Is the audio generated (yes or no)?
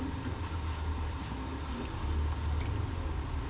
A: no